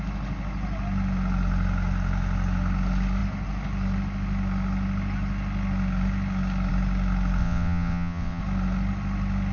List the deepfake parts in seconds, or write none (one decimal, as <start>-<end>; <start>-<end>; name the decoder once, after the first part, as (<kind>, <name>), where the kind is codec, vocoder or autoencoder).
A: 7.4-8.4 (vocoder, WaveNeXt)

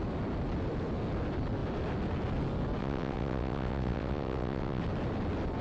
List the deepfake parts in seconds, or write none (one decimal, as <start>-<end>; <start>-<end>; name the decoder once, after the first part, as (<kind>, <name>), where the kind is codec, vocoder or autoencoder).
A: 2.8-4.8 (vocoder, WaveNeXt)

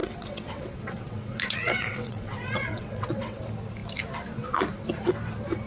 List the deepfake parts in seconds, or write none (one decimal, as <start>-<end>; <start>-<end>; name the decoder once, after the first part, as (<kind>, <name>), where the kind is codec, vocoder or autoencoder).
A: 0.0-3.4 (vocoder, WaveNeXt)

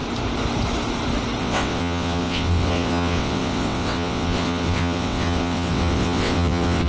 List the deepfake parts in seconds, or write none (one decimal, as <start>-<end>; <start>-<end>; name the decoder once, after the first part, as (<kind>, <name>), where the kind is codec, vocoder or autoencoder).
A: 1.4-6.9 (vocoder, WaveNeXt)

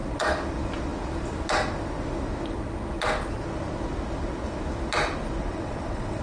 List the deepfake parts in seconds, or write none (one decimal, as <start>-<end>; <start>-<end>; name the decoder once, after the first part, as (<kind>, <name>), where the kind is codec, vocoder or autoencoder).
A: 5.4-6.2 (vocoder, WaveNeXt)